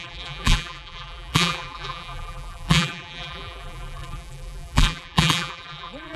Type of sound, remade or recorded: remade